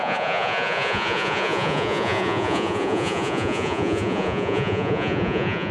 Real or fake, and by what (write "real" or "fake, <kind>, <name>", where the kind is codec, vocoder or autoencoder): fake, vocoder, Vocos